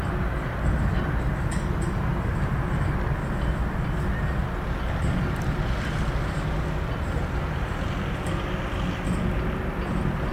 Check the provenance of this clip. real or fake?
real